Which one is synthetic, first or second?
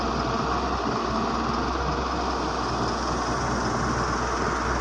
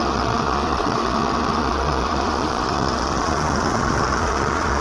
second